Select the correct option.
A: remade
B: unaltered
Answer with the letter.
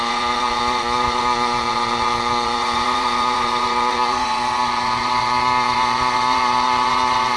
A